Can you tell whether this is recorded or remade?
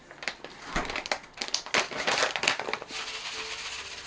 recorded